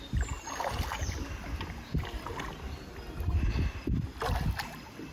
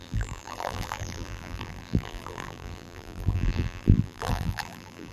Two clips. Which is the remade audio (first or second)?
second